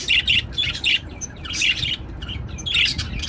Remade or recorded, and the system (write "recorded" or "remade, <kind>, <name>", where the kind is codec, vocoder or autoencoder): recorded